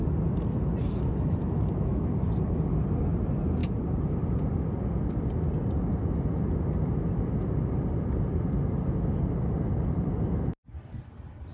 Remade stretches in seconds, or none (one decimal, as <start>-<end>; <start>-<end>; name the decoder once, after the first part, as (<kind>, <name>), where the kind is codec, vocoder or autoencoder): 0.8-2.1 (autoencoder, DAC-VAE)